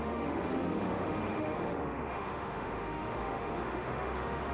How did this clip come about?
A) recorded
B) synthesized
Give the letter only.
B